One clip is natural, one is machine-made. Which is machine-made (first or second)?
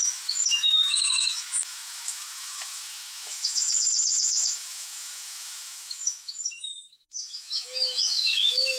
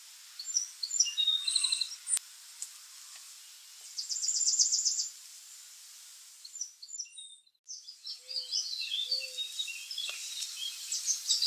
first